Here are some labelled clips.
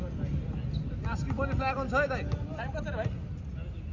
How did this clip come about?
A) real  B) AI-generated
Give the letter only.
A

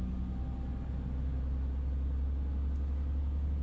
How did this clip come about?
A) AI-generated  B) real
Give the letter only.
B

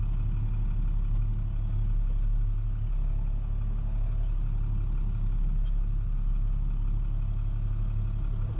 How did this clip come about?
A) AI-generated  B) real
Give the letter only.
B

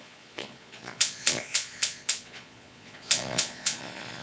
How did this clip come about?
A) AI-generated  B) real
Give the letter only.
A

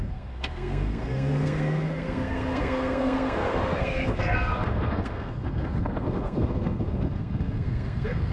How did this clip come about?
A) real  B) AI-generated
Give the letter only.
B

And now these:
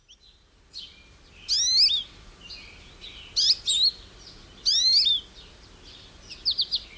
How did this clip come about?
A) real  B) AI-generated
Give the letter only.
A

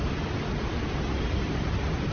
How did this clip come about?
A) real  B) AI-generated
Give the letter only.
A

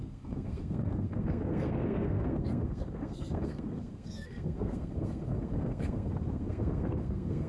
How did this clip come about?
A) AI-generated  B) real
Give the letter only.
A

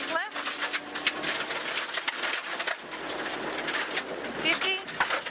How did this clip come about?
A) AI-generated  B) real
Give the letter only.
B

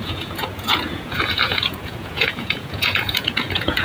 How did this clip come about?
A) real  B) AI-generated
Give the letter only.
B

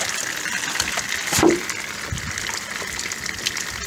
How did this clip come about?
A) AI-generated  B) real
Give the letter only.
B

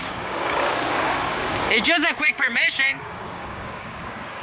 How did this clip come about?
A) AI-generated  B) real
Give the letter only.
A